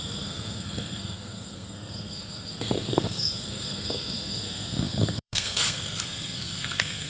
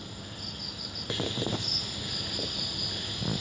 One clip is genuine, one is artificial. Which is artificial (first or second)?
first